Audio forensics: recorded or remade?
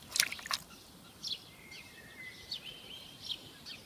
recorded